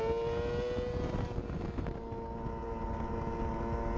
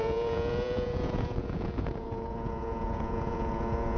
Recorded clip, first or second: first